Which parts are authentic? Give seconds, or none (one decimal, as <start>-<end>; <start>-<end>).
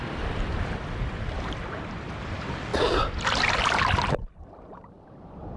2.7-4.1